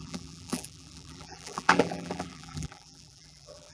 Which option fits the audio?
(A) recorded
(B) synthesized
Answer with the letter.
B